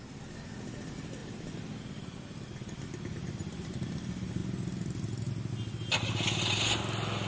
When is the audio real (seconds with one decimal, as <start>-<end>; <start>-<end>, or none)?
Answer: 0.0-7.3